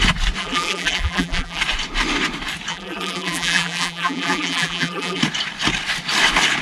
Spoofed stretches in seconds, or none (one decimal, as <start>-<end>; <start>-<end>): 0.4-1.6; 2.7-5.2